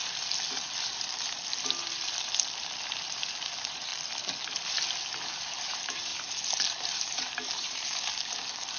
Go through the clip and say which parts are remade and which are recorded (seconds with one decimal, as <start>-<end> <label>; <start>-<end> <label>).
0.0-2.9 recorded; 2.9-3.9 remade; 3.9-5.2 recorded; 5.2-6.1 remade; 6.1-6.7 recorded; 6.7-8.8 remade